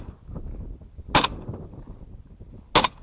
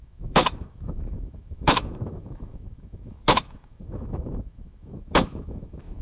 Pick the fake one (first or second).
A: second